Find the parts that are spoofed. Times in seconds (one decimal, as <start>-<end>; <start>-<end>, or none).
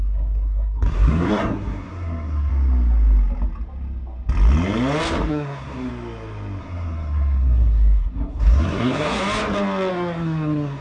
0.0-2.5; 5.3-5.9; 6.6-9.2; 9.9-10.8